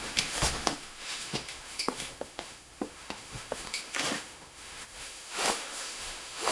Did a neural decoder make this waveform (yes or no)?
yes